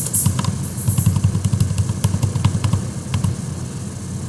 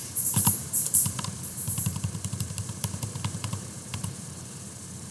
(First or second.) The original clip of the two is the first